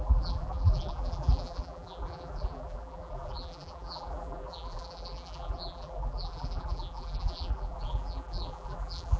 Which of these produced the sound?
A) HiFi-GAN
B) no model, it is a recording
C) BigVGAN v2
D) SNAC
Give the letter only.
C